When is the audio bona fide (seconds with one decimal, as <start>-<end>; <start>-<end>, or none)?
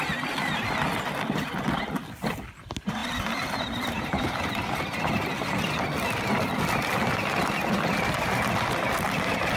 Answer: 0.0-9.6